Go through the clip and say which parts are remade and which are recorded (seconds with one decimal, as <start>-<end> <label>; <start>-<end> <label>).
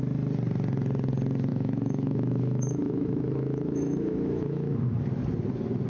0.0-1.5 recorded; 1.5-5.0 remade; 5.0-5.9 recorded